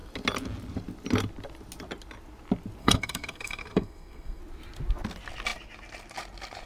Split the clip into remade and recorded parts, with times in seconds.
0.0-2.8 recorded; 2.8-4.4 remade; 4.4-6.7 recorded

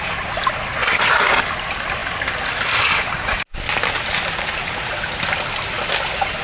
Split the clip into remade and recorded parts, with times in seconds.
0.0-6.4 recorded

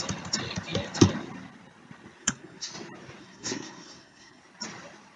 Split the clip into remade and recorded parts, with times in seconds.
0.0-2.2 recorded; 2.2-2.7 remade; 2.7-3.2 recorded; 3.2-4.4 remade; 4.4-5.2 recorded

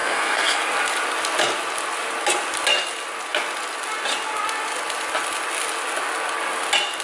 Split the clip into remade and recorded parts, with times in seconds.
0.0-0.6 remade; 0.6-7.0 recorded

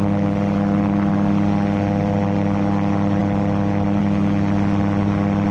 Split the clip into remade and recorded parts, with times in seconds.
0.0-5.5 recorded

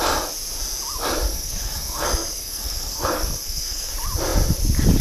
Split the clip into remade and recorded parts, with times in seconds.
0.0-1.3 recorded; 1.3-3.9 remade; 3.9-5.0 recorded

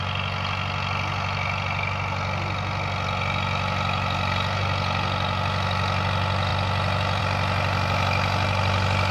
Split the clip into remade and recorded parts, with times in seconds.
0.0-9.1 recorded

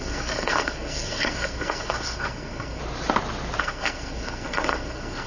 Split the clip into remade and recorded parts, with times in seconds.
0.0-2.8 remade; 2.8-3.6 recorded; 3.6-5.3 remade